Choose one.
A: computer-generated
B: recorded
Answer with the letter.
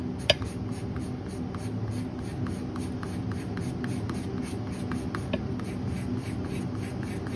B